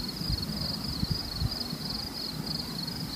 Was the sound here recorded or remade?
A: recorded